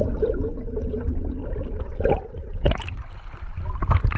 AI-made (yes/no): no